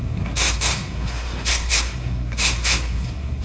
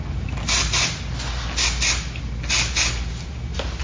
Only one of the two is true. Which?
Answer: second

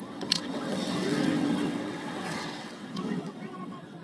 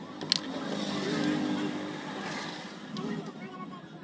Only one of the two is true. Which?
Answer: second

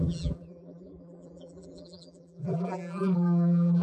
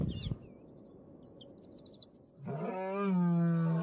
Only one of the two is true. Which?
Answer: second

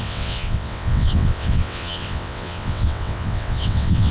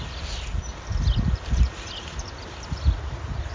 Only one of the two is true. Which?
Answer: second